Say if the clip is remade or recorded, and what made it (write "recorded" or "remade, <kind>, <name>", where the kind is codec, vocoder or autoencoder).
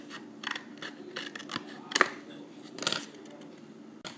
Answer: recorded